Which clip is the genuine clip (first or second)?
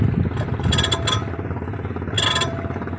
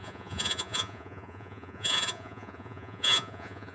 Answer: first